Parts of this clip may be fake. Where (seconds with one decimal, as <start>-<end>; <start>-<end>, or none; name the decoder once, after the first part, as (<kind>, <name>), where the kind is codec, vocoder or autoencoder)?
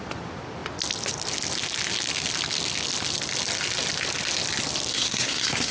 4.9-5.7 (codec, SNAC)